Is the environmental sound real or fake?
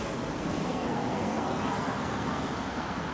fake